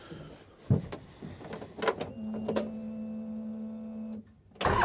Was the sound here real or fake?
real